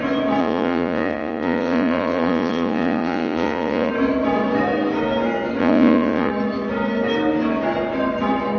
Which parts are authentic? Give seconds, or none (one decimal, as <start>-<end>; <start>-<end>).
0.0-0.4; 3.9-5.6; 6.3-8.6